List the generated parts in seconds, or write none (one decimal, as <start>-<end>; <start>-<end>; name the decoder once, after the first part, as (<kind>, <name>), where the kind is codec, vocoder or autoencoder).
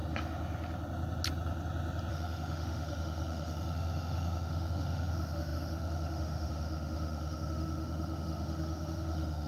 2.1-9.5 (autoencoder, DAC-VAE)